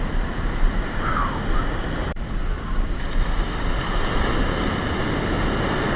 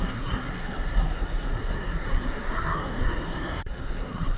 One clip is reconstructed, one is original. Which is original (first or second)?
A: first